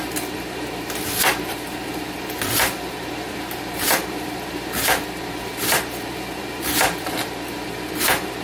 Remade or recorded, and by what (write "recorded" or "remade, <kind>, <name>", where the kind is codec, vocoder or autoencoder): remade, vocoder, BigVGAN v2